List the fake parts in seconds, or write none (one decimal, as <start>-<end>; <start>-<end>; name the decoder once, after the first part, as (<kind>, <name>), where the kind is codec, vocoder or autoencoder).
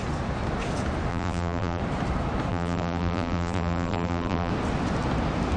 1.1-1.8 (vocoder, BigVGAN v2); 2.5-4.5